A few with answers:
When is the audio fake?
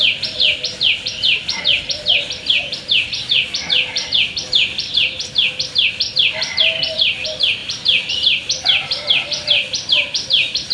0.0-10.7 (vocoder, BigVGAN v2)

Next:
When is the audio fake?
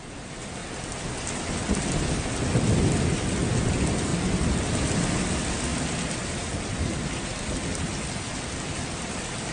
5.7-7.5 (vocoder, BigVGAN v2)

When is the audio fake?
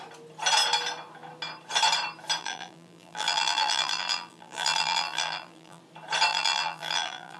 2.4-5.8 (vocoder, BigVGAN v2); 6.3-7.4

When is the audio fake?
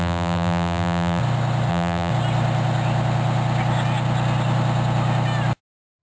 0.0-1.2 (vocoder, BigVGAN v2); 1.7-2.1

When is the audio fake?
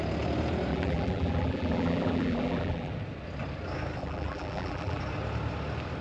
0.7-2.9 (vocoder, BigVGAN v2); 4.0-5.0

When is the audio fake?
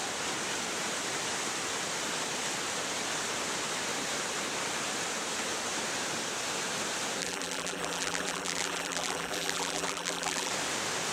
7.2-10.5 (vocoder, BigVGAN v2)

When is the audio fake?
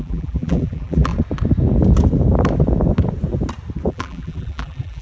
0.0-1.1 (vocoder, BigVGAN v2); 3.9-5.0